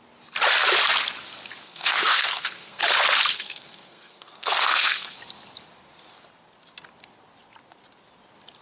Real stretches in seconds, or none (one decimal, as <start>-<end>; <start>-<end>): 0.0-1.6; 2.8-3.3; 5.2-8.6